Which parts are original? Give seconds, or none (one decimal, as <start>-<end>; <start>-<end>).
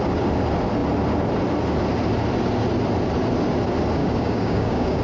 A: 0.0-4.0